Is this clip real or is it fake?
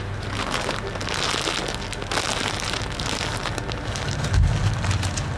real